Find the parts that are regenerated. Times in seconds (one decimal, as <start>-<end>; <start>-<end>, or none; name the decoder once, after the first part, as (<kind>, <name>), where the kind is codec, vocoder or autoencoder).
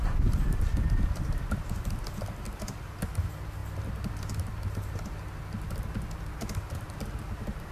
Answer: none